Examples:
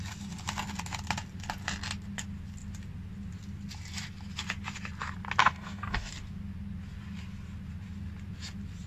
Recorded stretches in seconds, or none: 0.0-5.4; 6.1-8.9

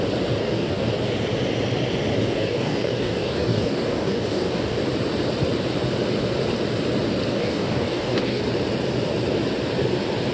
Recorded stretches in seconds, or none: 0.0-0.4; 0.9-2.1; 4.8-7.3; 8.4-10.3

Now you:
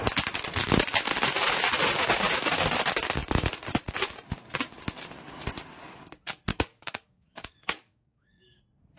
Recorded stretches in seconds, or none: 0.0-6.5; 8.6-9.0